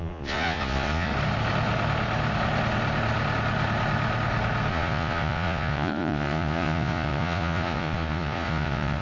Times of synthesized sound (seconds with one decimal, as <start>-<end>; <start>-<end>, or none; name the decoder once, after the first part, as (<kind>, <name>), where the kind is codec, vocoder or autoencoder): 0.0-1.1 (vocoder, Vocos); 4.7-9.0